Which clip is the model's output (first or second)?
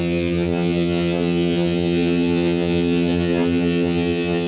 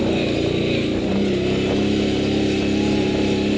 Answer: first